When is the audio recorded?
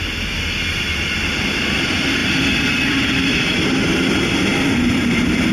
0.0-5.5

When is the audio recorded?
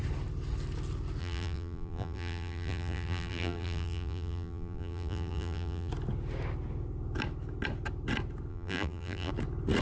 0.0-1.2; 5.9-8.5; 9.3-9.8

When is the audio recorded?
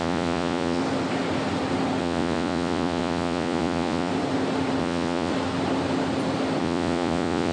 0.8-2.0; 4.1-4.8; 5.3-6.6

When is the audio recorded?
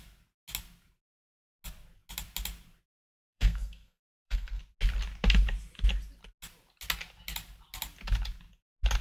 0.0-3.2; 4.6-9.0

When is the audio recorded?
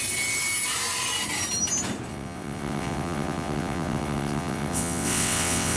0.0-2.1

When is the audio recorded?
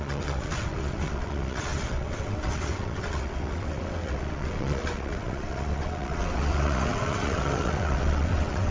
none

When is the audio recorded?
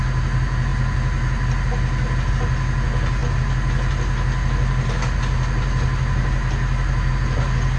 0.0-7.8